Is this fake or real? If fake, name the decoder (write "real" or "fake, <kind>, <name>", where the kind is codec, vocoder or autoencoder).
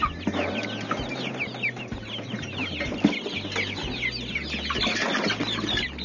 real